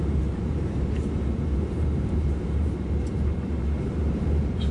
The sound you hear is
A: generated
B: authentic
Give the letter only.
A